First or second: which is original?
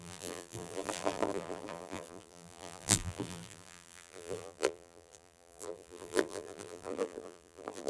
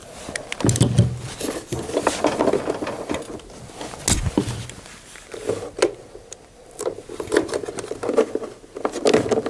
second